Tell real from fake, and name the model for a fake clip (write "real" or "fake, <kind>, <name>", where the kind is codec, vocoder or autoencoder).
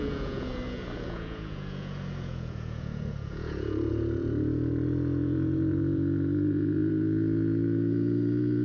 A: fake, vocoder, Vocos